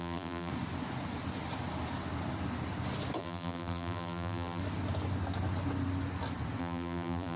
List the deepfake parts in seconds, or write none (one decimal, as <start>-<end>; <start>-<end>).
0.0-0.5; 3.2-4.6; 6.6-7.4